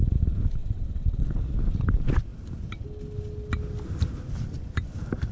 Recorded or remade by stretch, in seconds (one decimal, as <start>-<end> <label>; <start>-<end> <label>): 0.0-0.6 recorded; 0.6-1.4 remade; 1.4-5.3 recorded